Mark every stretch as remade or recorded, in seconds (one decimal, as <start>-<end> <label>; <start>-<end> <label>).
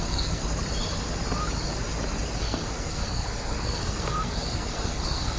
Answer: 0.0-0.4 remade; 0.4-2.4 recorded; 2.4-5.4 remade